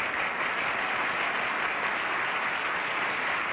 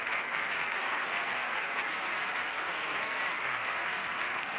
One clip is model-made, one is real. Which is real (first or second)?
first